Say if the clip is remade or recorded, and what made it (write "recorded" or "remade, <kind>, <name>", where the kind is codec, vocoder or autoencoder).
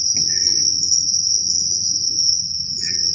remade, vocoder, Vocos